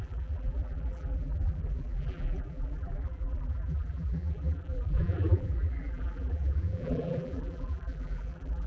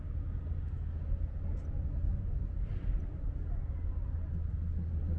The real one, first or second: second